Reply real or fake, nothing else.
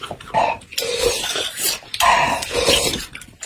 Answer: real